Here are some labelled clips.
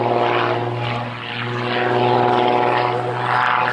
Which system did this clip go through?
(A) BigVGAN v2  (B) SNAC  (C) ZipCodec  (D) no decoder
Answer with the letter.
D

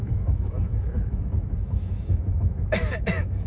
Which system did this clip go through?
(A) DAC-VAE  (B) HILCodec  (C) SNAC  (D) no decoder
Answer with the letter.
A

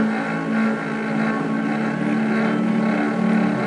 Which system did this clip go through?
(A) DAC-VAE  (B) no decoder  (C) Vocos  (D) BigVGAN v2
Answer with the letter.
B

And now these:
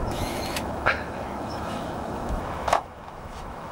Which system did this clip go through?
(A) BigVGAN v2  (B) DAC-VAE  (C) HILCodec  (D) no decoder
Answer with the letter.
B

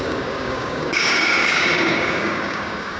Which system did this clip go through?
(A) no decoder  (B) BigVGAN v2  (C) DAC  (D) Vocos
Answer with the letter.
C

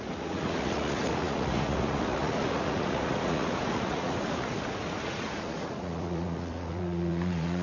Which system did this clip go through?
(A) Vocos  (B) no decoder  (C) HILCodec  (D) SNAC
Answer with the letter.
A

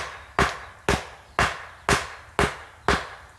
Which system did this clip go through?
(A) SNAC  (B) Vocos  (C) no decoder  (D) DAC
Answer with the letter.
C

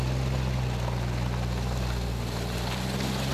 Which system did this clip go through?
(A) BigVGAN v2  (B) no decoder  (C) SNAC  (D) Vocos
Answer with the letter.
B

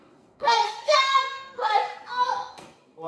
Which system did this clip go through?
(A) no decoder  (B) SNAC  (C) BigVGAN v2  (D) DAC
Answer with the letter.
B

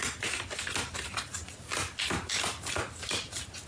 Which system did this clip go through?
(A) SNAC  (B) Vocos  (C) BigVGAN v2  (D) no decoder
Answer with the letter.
D